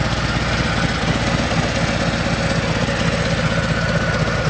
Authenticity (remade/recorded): recorded